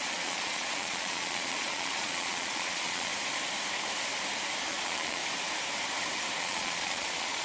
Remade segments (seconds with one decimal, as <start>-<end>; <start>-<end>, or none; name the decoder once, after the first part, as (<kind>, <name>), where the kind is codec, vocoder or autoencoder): 0.0-3.1 (vocoder, Vocos); 4.7-5.2; 6.4-7.4